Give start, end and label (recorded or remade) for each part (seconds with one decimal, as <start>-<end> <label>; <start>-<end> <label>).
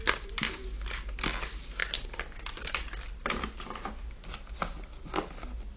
0.0-5.8 recorded